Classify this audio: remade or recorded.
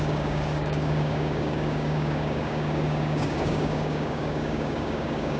remade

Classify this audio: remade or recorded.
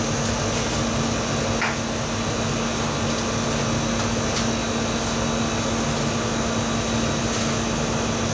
recorded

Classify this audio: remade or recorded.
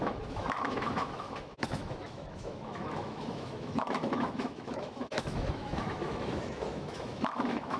remade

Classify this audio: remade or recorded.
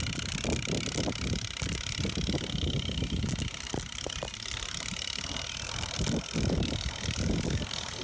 recorded